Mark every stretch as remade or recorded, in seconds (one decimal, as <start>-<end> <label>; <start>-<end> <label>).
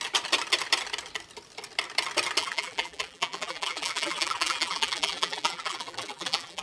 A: 0.0-2.4 recorded; 2.4-6.6 remade